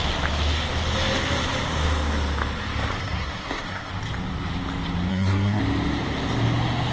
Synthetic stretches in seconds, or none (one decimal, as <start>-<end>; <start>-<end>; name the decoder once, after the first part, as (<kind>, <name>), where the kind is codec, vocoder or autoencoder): 3.0-3.9 (codec, SNAC); 5.1-5.6